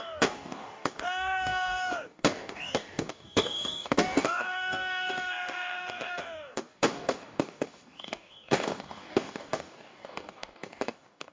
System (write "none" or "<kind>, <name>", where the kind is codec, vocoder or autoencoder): codec, DAC